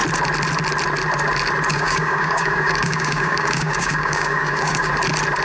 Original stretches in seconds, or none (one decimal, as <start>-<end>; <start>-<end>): 0.0-1.7; 4.9-5.4